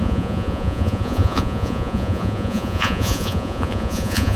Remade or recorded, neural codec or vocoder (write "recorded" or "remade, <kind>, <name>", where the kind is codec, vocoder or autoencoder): remade, vocoder, Vocos